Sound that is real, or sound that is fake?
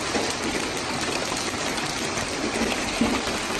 real